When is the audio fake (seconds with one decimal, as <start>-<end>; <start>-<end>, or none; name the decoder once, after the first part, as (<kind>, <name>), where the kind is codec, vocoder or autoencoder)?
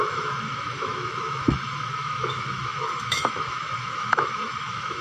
0.0-5.0 (autoencoder, DAC-VAE)